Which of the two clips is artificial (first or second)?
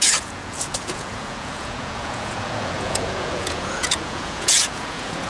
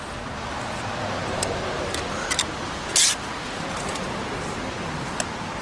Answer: first